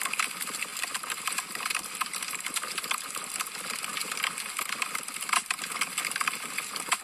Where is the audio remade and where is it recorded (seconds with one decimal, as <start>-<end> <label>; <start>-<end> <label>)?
0.0-7.0 recorded